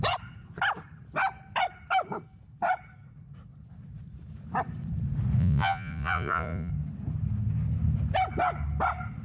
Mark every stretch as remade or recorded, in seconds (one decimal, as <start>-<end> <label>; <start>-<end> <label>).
0.0-5.4 recorded; 5.4-6.7 remade; 6.7-9.2 recorded